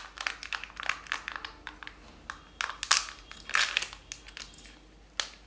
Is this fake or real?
real